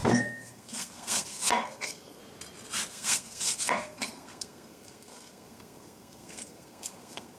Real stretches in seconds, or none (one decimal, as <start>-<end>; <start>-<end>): 2.2-2.9